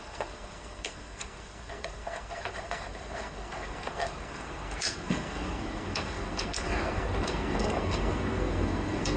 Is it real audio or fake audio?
fake